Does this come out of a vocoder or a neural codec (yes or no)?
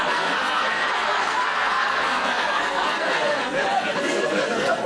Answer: yes